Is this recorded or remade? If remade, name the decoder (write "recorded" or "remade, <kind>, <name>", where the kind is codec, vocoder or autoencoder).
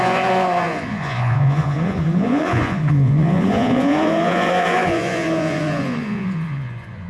remade, vocoder, Vocos